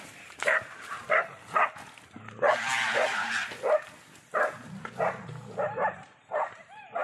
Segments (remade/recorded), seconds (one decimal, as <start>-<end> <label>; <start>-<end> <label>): 0.0-1.0 remade; 1.0-5.2 recorded; 5.2-7.0 remade